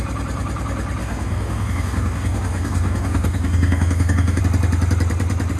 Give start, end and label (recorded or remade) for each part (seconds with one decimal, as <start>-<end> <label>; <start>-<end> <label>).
0.0-1.0 recorded; 1.0-4.4 remade; 4.4-5.6 recorded